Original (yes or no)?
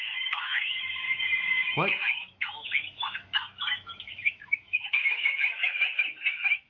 no